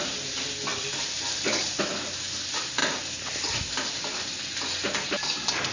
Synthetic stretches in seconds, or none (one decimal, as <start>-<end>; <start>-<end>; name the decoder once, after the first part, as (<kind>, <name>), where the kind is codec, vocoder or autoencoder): 0.7-1.8 (vocoder, BigVGAN v2)